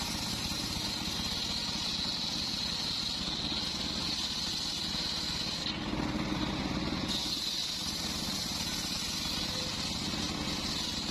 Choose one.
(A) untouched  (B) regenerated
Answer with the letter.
A